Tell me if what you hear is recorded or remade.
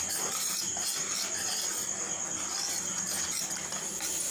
recorded